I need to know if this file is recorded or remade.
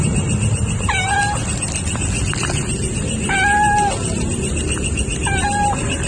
recorded